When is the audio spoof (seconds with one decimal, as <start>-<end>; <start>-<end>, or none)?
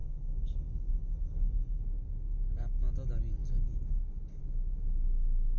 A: 0.0-1.8